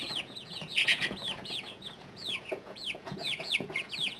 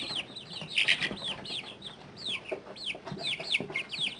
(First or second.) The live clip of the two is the second